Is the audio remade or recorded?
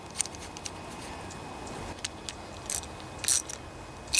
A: recorded